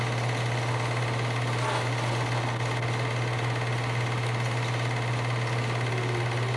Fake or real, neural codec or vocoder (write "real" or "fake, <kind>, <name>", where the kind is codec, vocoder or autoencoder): real